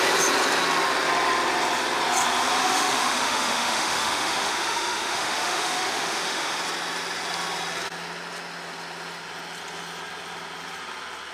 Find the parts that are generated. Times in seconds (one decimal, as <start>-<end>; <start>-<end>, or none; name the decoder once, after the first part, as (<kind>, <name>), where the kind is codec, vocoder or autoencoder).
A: 2.6-6.6 (autoencoder, DAC-VAE)